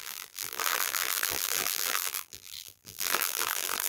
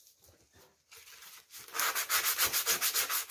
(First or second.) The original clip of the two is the second